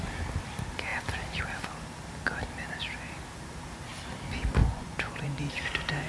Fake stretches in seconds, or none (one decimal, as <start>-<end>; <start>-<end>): 4.6-5.4